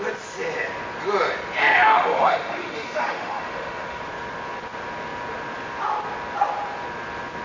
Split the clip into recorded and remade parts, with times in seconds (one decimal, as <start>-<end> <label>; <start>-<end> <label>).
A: 0.0-1.6 recorded; 1.6-4.0 remade; 4.0-7.4 recorded